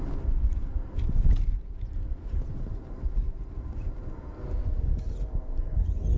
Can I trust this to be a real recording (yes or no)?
yes